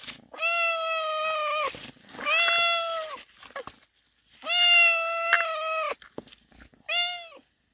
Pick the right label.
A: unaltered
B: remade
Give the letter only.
A